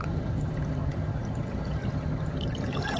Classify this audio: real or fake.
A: fake